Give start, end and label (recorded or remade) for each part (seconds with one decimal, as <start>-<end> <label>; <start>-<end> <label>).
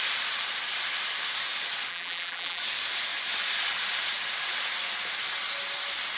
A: 0.0-1.9 recorded; 1.9-2.6 remade; 2.6-6.2 recorded